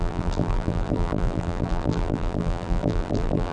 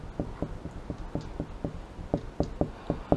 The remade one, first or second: first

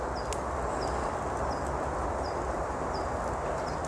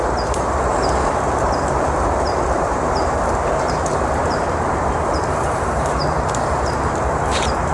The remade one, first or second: second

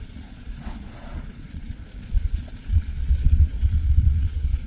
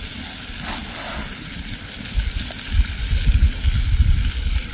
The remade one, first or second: first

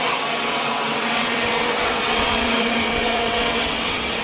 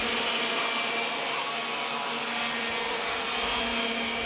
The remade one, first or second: first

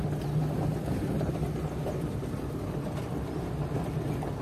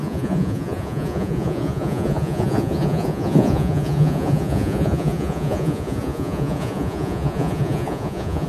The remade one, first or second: second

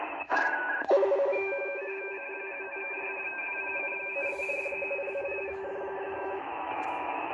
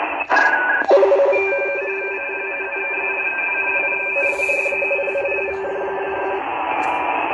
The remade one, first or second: first